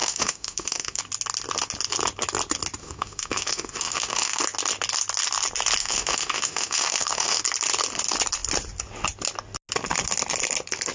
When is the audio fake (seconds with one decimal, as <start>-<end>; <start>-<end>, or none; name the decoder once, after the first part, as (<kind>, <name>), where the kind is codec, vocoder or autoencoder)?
0.0-1.0 (autoencoder, DAC-VAE); 2.8-4.4; 5.8-7.4